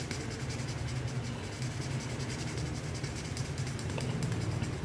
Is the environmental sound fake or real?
real